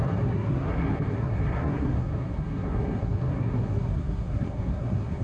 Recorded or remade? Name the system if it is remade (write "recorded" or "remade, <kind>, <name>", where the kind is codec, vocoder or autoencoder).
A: remade, codec, SNAC